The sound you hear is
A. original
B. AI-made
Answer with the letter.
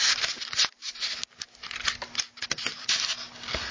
A